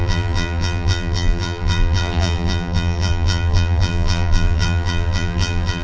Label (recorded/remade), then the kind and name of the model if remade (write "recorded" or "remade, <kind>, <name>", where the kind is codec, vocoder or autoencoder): remade, vocoder, BigVGAN v2